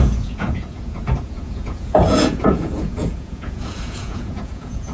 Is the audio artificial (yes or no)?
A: yes